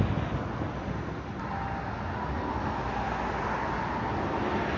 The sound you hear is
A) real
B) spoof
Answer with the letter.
A